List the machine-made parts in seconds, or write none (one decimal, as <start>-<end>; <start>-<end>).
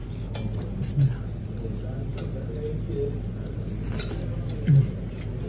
none